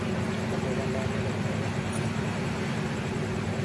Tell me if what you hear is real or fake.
real